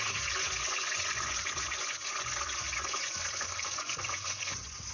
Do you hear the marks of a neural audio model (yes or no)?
yes